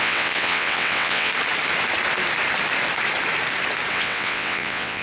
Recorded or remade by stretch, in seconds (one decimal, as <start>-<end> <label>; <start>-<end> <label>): 0.0-1.3 remade; 1.3-3.9 recorded; 3.9-5.0 remade